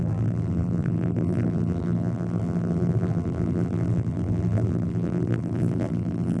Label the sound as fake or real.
fake